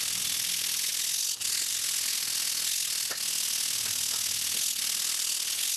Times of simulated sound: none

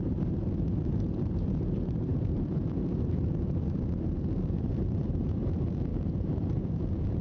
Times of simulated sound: 0.0-7.2 (vocoder, BigVGAN v2)

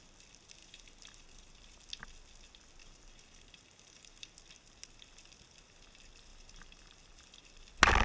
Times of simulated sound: 0.6-1.5 (vocoder, BigVGAN v2); 2.8-4.3; 6.3-7.5

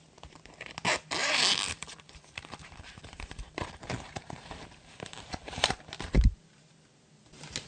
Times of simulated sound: 1.2-5.8 (vocoder, BigVGAN v2)

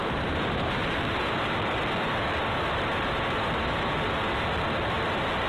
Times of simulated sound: 0.0-1.5 (vocoder, BigVGAN v2); 3.6-4.1

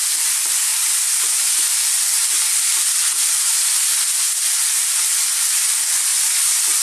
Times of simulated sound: 0.7-1.7 (vocoder, BigVGAN v2); 2.2-4.4; 6.1-6.8